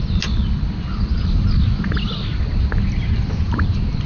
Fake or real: real